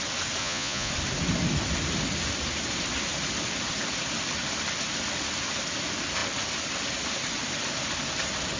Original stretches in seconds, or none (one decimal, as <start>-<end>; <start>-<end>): 0.0-0.4; 0.9-8.6

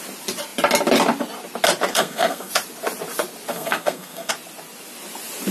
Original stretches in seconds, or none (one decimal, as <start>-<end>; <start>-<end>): 0.0-1.9; 2.5-3.5; 4.3-5.5

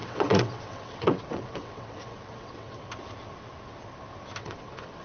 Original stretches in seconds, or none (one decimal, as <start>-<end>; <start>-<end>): 2.9-4.4

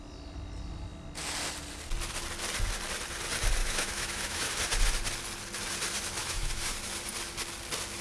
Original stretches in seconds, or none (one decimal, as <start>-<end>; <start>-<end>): 0.0-3.6; 4.5-6.2; 6.7-8.0

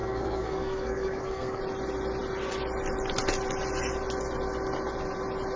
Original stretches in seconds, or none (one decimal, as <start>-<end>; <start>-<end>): 1.6-5.6

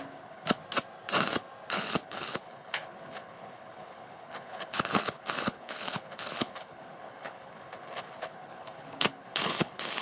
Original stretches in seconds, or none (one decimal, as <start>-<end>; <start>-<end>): 0.6-1.7

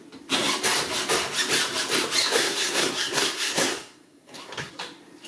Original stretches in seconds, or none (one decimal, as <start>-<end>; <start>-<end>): 0.0-2.2; 4.7-5.3

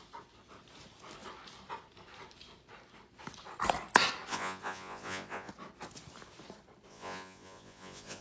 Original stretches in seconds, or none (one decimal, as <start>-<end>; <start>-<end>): 0.0-4.3; 5.5-6.9